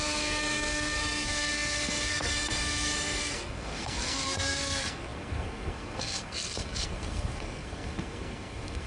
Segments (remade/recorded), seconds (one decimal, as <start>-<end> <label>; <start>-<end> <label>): 0.0-8.9 remade